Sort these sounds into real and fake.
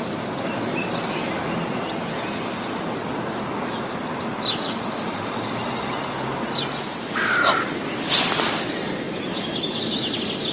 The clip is real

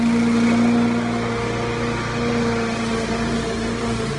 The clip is real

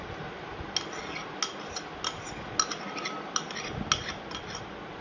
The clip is real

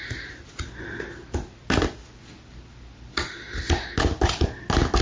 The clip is real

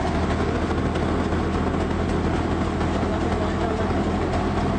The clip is real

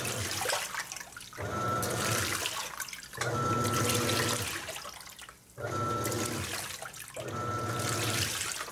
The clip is real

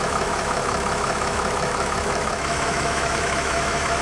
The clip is fake